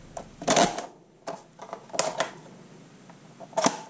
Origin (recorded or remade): recorded